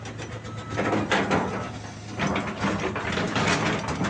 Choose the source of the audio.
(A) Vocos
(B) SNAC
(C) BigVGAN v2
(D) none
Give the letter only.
D